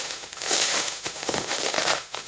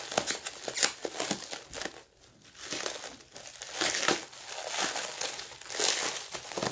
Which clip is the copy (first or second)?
first